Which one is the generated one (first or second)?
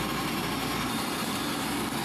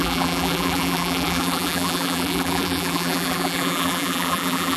second